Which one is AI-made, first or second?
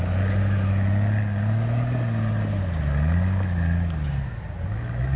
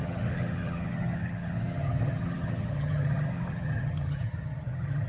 second